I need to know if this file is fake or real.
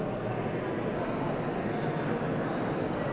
real